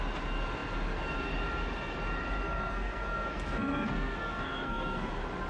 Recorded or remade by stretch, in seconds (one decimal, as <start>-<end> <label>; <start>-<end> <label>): 0.0-2.4 recorded; 2.4-5.1 remade; 5.1-5.5 recorded